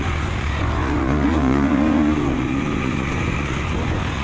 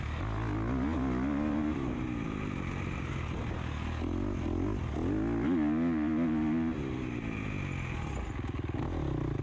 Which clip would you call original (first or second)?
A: second